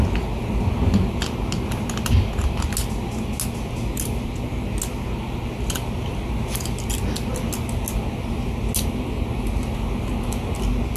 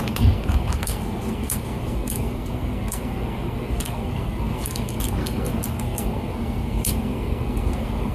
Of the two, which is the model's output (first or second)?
second